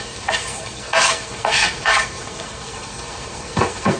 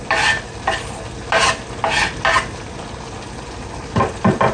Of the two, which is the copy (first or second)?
first